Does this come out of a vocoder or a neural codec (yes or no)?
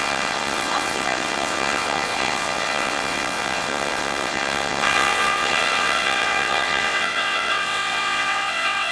yes